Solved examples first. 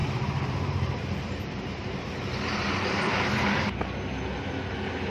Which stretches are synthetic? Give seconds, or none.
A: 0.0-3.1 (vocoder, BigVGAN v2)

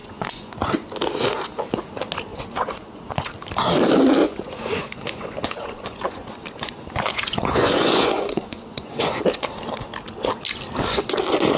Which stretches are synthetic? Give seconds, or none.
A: 0.0-0.5 (vocoder, Vocos); 2.3-3.3; 4.2-9.2

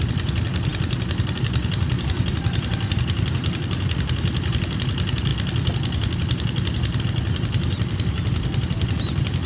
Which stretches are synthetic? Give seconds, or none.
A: 0.7-1.3 (vocoder, BigVGAN v2)

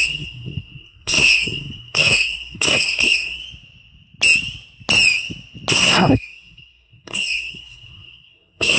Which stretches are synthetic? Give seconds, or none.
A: 0.0-3.4 (codec, SNAC); 5.7-8.8

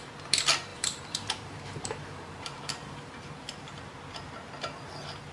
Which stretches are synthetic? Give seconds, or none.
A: 0.7-3.9 (vocoder, BigVGAN v2)

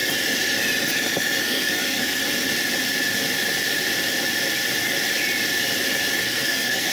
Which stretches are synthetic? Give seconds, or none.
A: 1.4-2.2 (codec, SNAC); 6.2-6.9

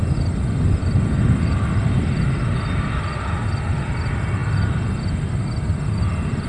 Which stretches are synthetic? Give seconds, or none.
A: none

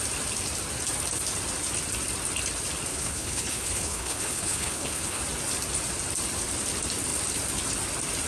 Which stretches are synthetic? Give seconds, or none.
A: 2.9-5.2 (codec, HILCodec)